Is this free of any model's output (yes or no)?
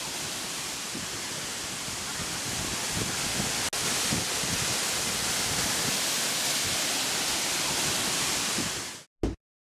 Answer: yes